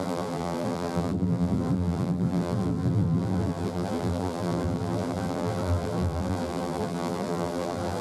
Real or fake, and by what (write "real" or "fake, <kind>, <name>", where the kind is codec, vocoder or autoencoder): fake, vocoder, BigVGAN v2